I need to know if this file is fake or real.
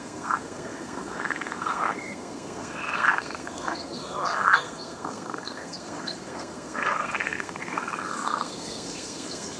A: fake